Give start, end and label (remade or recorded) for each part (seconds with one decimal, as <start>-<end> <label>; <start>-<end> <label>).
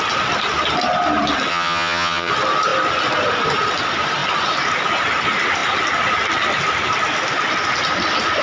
0.0-1.5 recorded; 1.5-2.3 remade; 2.3-8.4 recorded